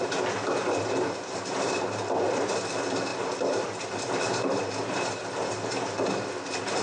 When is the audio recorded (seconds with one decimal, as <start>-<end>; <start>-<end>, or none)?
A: 0.0-6.8